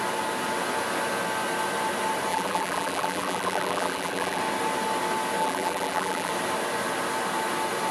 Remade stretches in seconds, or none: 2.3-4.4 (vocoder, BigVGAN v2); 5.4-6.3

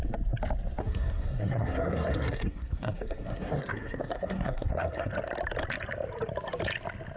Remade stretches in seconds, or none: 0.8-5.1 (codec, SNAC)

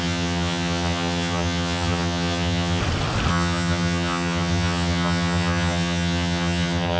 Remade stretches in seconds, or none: 0.0-2.8 (vocoder, HiFi-GAN); 3.3-7.0